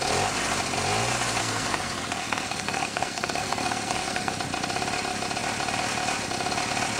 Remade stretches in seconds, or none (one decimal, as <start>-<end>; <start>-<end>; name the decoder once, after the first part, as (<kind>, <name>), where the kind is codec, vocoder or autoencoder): 1.4-4.3 (codec, SNAC)